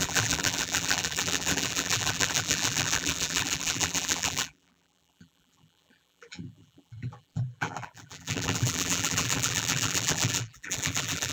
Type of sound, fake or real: fake